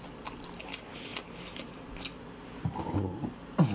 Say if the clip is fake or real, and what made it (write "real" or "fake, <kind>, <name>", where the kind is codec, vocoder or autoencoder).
real